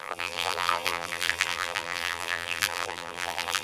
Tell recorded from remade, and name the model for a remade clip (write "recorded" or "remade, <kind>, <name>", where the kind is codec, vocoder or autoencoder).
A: remade, vocoder, BigVGAN v2